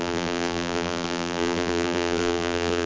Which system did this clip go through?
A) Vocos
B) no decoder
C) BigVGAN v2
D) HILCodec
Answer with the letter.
C